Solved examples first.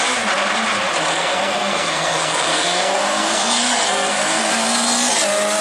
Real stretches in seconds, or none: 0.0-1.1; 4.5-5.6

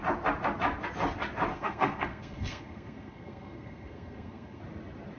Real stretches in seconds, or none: 0.0-1.5; 4.6-5.2

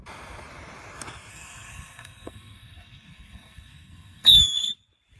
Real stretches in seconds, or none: 0.0-1.3; 4.4-5.2